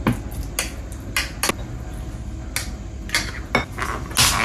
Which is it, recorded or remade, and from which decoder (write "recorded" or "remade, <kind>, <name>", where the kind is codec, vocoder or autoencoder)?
recorded